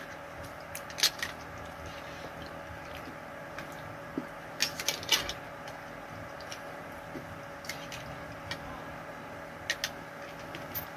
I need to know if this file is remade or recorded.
recorded